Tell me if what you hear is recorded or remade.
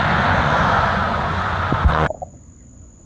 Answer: remade